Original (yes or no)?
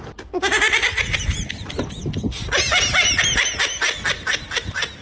yes